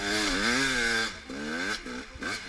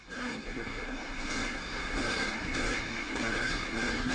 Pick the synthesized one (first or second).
second